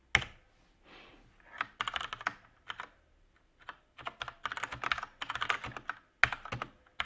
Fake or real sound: real